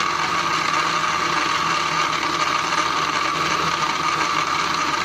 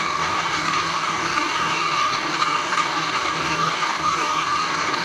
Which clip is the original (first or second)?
first